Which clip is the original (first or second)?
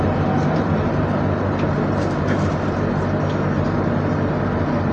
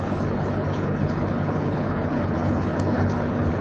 first